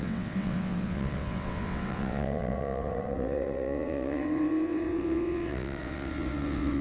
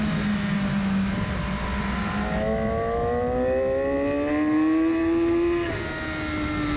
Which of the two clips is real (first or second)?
second